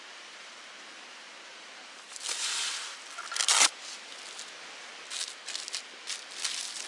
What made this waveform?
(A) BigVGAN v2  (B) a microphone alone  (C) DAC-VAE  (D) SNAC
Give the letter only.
B